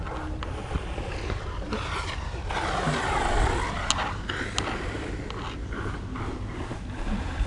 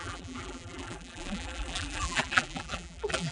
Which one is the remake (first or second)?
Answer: second